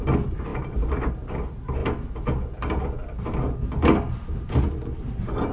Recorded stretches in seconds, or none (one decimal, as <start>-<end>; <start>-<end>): 0.0-5.5